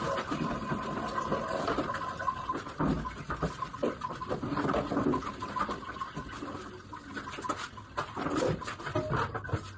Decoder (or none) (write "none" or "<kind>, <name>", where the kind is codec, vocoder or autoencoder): none